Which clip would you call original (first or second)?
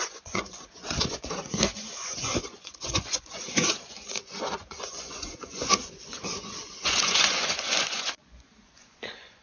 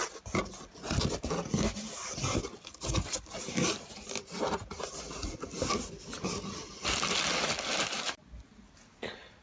second